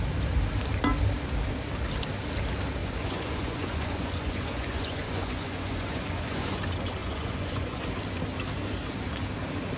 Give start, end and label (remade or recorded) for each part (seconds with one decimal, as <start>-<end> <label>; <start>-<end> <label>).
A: 0.0-2.8 recorded; 2.8-6.6 remade; 6.6-7.0 recorded; 7.0-7.9 remade; 7.9-9.8 recorded